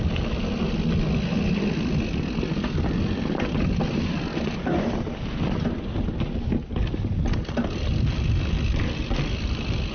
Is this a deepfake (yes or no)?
no